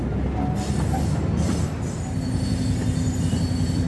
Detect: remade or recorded recorded